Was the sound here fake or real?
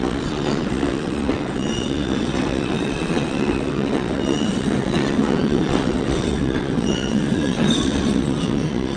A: fake